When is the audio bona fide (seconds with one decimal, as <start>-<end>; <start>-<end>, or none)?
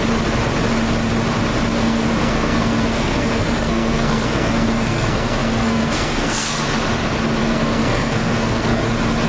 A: 0.0-1.8; 6.6-7.4; 8.8-9.3